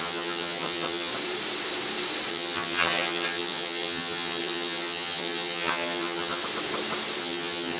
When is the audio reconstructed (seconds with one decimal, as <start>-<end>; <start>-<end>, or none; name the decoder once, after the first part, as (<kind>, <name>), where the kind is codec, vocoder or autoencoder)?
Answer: 0.0-1.1 (vocoder, HiFi-GAN); 2.3-6.4; 7.2-7.8